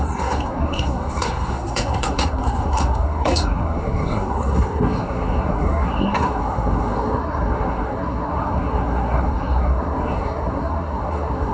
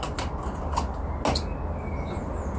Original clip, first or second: second